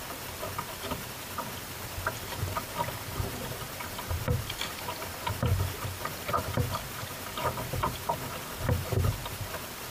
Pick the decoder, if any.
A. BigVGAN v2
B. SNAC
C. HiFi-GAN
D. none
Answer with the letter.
D